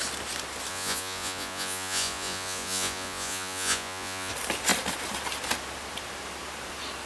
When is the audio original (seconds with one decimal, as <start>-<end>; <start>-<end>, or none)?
0.0-0.7; 4.3-7.1